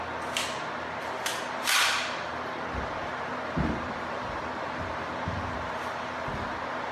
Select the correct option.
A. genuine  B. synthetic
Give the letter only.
A